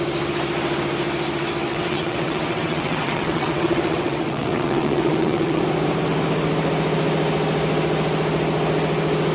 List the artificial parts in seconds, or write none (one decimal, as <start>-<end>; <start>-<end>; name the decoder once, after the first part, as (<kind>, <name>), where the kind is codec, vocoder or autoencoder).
1.7-5.6 (vocoder, WaveNeXt)